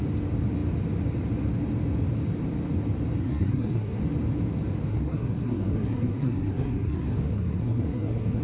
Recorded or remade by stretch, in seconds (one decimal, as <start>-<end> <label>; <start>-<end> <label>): 0.0-3.2 recorded; 3.2-4.0 remade; 4.0-4.9 recorded; 4.9-8.4 remade